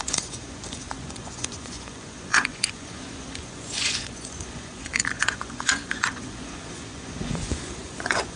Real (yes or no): no